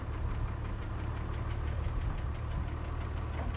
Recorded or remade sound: recorded